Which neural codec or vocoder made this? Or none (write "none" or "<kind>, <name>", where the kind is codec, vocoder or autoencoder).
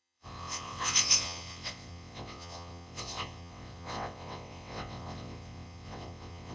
vocoder, WaveNeXt